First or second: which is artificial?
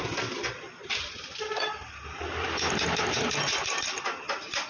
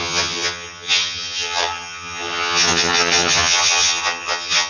second